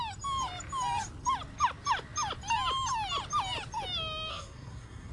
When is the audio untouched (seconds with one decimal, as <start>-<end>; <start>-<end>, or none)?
0.0-4.3

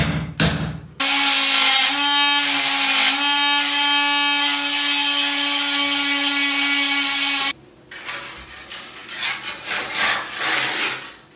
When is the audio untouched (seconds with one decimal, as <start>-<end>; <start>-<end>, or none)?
0.0-11.4

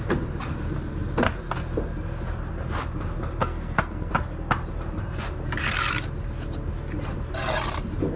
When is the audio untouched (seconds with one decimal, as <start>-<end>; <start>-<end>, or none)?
0.0-3.4; 4.1-8.2